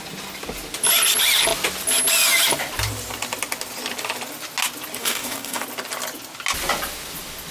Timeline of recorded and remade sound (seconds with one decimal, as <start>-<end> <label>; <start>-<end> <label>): 0.0-5.0 recorded; 5.0-5.6 remade; 5.6-7.5 recorded